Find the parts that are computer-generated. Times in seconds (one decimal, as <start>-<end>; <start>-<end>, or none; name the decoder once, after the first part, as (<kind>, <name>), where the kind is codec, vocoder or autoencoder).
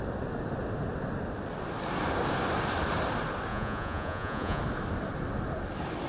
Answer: 3.5-4.6 (vocoder, Vocos)